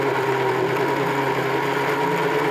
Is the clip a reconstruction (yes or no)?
no